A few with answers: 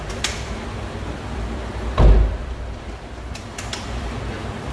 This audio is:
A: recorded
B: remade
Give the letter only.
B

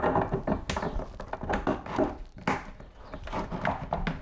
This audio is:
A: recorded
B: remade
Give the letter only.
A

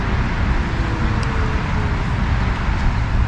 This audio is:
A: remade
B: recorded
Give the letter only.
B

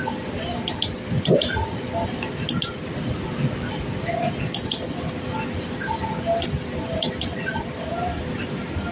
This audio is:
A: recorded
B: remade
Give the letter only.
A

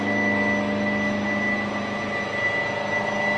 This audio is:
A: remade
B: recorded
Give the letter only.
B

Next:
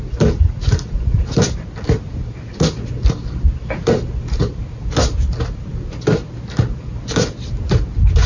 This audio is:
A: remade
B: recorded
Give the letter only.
B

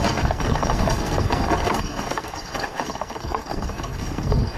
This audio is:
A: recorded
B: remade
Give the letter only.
B